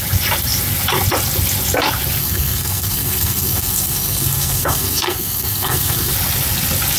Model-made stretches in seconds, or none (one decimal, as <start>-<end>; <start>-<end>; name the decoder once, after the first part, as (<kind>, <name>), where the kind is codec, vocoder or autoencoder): 2.2-6.1 (codec, SNAC)